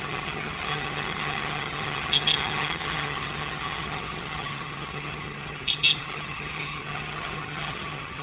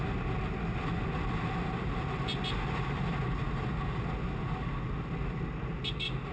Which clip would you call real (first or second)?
second